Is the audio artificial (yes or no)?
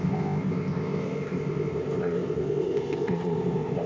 yes